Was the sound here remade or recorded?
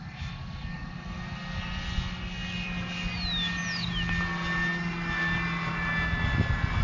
recorded